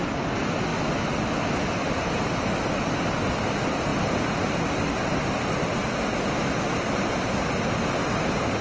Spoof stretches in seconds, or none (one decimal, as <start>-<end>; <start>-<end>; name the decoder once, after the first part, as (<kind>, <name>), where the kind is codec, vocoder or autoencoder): none